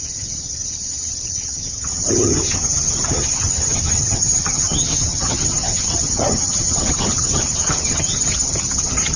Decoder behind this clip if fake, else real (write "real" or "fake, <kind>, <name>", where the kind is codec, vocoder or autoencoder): fake, vocoder, HiFi-GAN